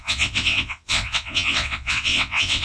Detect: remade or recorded remade